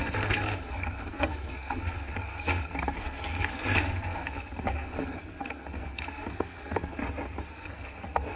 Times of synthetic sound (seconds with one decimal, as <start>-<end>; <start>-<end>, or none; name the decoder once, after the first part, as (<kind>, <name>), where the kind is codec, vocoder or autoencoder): 0.0-7.0 (codec, SNAC); 7.5-8.4